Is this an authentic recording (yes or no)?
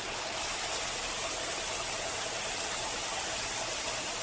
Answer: yes